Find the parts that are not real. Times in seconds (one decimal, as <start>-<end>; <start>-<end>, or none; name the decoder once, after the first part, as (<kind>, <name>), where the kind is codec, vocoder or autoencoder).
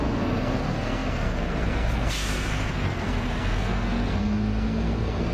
0.0-5.3 (codec, SNAC)